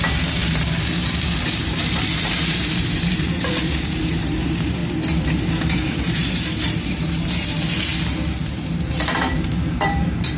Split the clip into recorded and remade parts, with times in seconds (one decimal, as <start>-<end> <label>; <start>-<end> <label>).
0.0-0.4 remade; 0.4-1.6 recorded; 1.6-4.8 remade; 4.8-5.4 recorded; 5.4-7.9 remade; 7.9-8.5 recorded; 8.5-10.4 remade